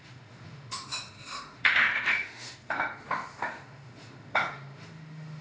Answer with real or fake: fake